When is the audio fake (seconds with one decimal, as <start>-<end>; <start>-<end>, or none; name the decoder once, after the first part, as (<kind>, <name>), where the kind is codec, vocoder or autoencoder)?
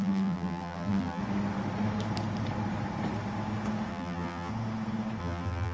0.0-1.2 (vocoder, BigVGAN v2); 3.9-4.5; 5.2-5.7